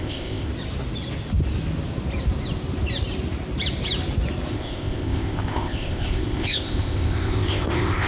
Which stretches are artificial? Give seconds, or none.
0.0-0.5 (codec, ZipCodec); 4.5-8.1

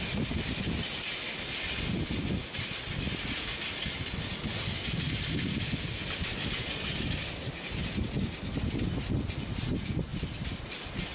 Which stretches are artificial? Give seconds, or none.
none

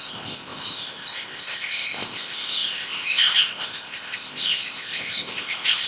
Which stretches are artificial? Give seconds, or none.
0.0-5.9 (codec, ZipCodec)

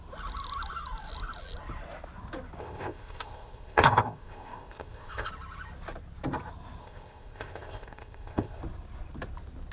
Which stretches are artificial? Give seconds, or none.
2.6-5.3 (codec, ZipCodec); 6.8-8.6

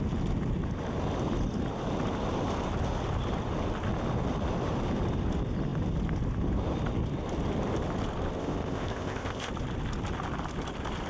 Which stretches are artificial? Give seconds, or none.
8.4-9.5 (codec, ZipCodec)